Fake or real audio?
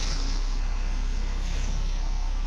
fake